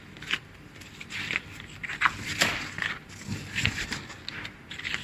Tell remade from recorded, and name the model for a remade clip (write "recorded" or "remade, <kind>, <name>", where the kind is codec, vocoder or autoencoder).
recorded